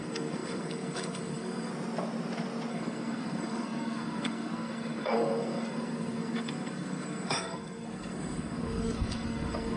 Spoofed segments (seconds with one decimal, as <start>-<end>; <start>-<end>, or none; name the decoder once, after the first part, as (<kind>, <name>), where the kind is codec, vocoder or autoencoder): 0.0-1.7 (codec, SNAC); 2.7-9.8